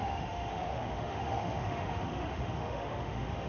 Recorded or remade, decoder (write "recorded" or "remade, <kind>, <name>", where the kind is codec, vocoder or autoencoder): remade, autoencoder, DAC-VAE